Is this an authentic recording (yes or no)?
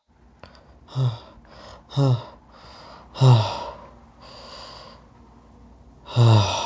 yes